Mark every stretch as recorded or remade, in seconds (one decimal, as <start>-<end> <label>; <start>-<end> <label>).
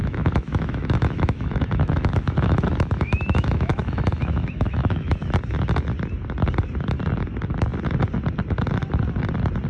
0.0-5.3 remade; 5.3-9.7 recorded